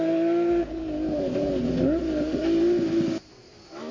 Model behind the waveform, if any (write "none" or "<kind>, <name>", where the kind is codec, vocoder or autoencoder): none